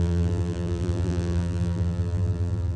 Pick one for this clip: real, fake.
fake